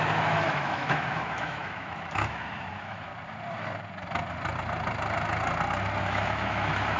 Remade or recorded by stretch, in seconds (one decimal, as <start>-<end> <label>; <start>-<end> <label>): 0.0-3.1 remade; 3.1-6.0 recorded; 6.0-7.0 remade